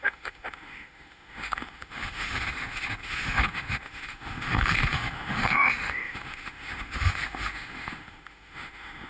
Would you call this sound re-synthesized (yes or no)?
yes